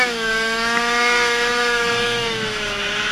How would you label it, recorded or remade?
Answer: remade